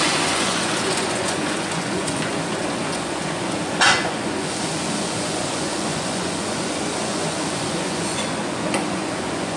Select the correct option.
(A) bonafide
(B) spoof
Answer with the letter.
B